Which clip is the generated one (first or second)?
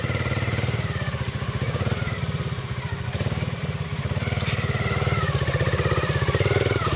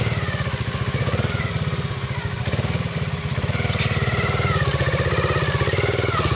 first